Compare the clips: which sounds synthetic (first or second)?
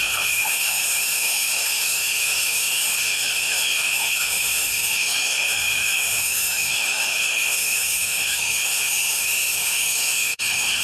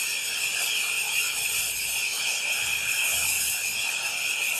first